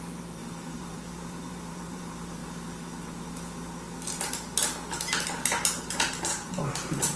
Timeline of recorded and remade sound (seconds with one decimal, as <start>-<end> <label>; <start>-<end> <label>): 0.0-2.4 remade; 2.4-6.0 recorded; 6.0-7.2 remade